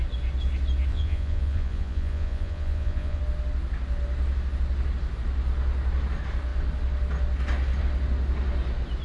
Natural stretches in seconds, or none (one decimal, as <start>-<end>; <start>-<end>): 0.0-0.9; 3.2-9.0